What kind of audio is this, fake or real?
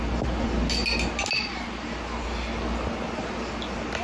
real